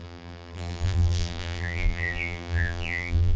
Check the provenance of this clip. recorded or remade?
remade